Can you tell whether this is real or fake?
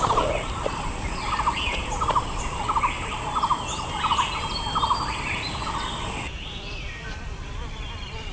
real